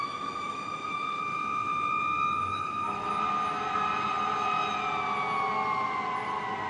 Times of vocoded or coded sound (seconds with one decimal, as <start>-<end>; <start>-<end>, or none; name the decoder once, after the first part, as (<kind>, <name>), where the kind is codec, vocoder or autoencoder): 0.0-2.0 (autoencoder, DAC-VAE); 2.4-3.1

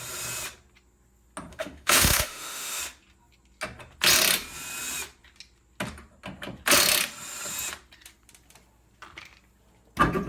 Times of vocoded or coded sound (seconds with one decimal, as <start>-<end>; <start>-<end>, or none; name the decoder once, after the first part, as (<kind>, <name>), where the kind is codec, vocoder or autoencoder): 1.5-2.8 (autoencoder, DAC-VAE)